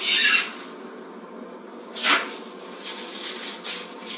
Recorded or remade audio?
recorded